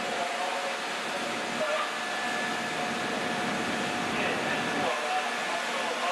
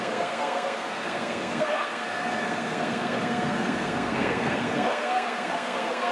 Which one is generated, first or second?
second